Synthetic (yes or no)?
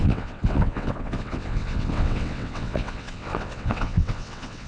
yes